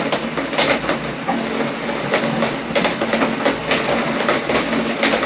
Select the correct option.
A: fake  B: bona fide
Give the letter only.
B